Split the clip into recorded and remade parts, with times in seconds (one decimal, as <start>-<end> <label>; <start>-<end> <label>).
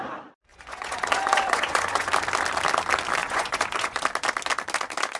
0.0-0.5 recorded; 0.5-2.1 remade; 2.1-3.2 recorded; 3.2-4.0 remade; 4.0-5.2 recorded